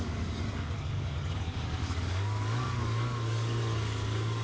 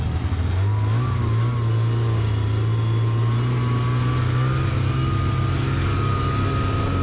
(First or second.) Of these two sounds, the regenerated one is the first